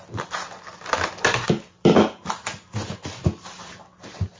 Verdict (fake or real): real